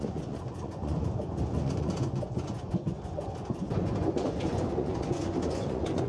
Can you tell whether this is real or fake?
fake